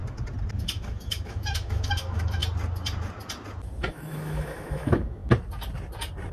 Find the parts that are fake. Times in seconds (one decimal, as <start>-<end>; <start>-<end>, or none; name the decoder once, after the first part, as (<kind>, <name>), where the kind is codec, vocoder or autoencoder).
0.6-2.4 (autoencoder, DAC-VAE); 3.9-5.2